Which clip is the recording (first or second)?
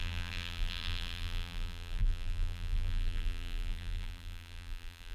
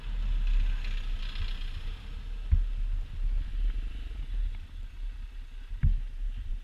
second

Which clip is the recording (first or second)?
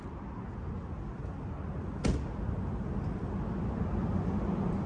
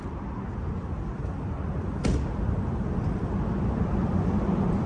first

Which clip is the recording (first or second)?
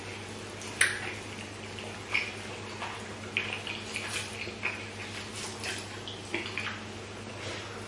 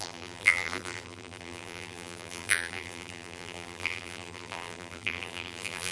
first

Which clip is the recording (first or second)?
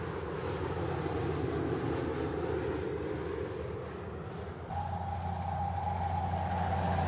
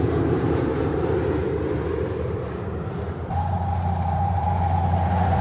first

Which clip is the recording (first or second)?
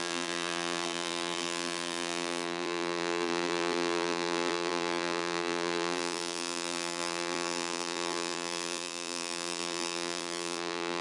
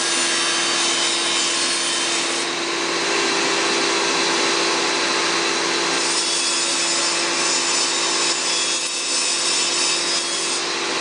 second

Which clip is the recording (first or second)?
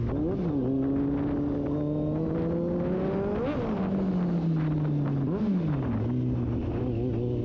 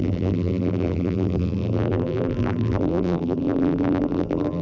first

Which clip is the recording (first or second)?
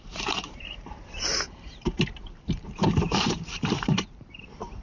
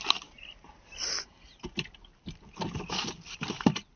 second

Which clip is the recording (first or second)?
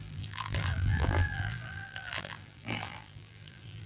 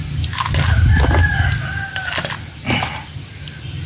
second